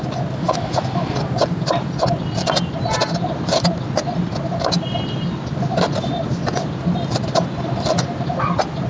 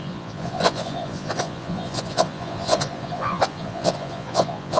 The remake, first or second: second